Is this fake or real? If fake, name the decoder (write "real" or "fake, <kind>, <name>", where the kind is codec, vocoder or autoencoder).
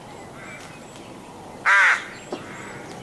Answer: real